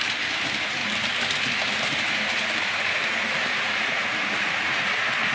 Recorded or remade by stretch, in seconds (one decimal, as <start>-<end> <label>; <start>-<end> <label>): 0.0-0.8 remade; 0.8-1.7 recorded; 1.7-5.3 remade